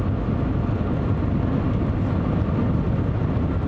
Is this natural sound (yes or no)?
yes